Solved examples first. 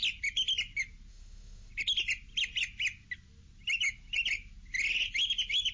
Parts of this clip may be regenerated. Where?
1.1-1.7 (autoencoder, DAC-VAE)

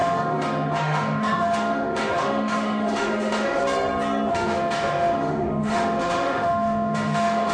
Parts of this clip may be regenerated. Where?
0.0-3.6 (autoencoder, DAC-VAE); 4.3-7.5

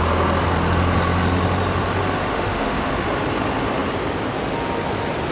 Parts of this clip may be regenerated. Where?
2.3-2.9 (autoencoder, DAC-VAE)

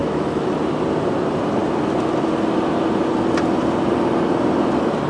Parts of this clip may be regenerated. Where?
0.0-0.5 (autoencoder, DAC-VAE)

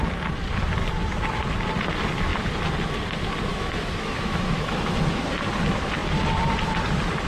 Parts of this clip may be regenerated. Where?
3.5-5.0 (autoencoder, DAC-VAE)